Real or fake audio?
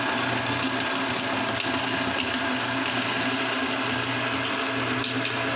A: real